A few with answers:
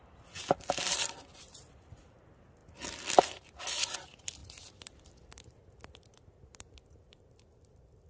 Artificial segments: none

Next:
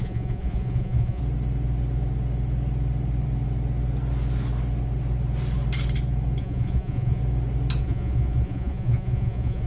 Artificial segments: 0.0-1.2; 6.4-7.2; 7.8-9.7

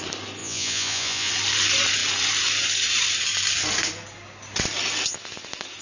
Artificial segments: 0.4-1.3

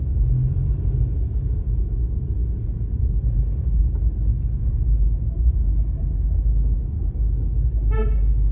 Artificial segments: none

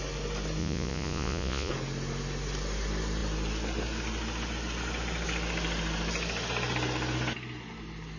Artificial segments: 0.6-1.7

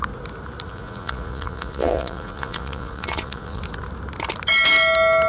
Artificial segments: 0.7-3.6

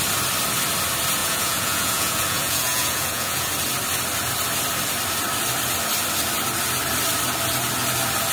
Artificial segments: 1.2-3.5

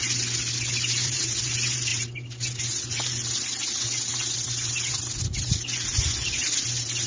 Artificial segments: none